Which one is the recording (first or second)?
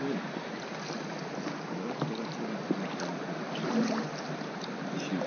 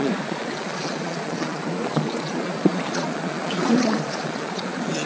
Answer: first